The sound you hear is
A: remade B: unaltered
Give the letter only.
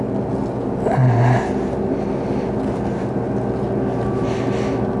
B